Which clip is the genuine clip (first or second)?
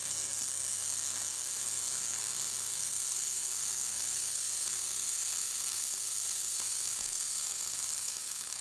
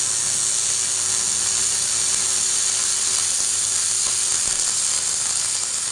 second